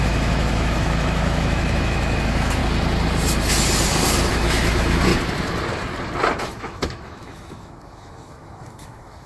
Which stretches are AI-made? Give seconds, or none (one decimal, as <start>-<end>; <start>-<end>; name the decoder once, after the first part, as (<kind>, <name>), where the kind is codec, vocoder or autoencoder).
0.0-2.6 (autoencoder, DAC-VAE); 4.3-5.1; 6.4-9.3